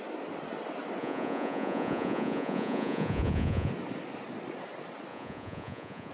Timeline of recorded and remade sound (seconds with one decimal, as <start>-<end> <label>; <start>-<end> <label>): 0.0-1.0 recorded; 1.0-3.7 remade; 3.7-5.1 recorded; 5.1-6.1 remade

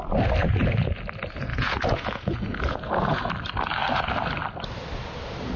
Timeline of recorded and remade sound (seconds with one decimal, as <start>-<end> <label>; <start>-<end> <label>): 0.0-0.4 recorded; 0.4-1.0 remade; 1.0-1.5 recorded; 1.5-3.3 remade; 3.3-5.6 recorded

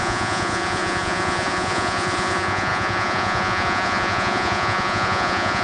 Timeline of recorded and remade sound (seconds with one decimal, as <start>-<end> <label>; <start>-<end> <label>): 0.0-5.6 remade

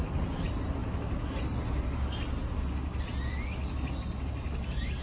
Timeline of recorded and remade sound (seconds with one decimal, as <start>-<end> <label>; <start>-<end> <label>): 0.0-5.0 recorded

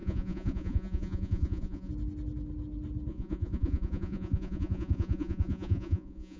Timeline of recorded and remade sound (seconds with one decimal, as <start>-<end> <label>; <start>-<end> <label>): 0.0-1.9 remade; 1.9-3.1 recorded; 3.1-6.4 remade

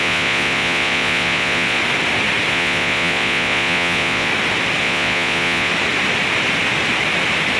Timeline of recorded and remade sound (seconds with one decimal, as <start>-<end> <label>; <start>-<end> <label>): 0.0-1.8 remade; 1.8-2.5 recorded; 2.5-4.3 remade; 4.3-4.8 recorded; 4.8-5.7 remade; 5.7-7.6 recorded